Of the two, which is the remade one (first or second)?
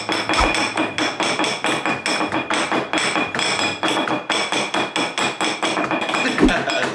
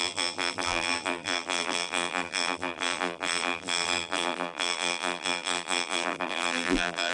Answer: second